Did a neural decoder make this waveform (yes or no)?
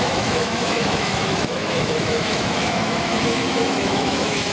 yes